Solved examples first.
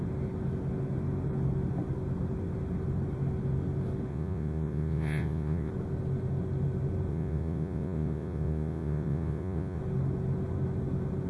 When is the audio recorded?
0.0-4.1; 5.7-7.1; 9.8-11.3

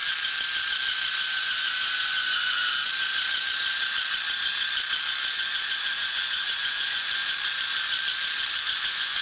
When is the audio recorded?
0.0-1.4; 2.6-5.3; 7.2-8.6

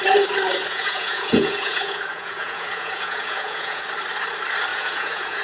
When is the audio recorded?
0.0-0.6; 3.8-4.7

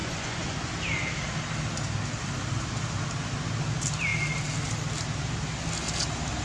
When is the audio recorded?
0.7-6.4

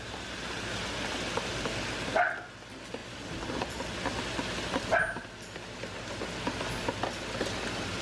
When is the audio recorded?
0.0-8.0

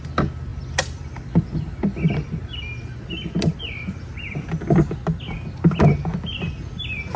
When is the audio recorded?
0.0-7.2

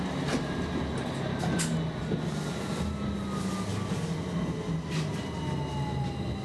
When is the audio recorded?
0.0-6.4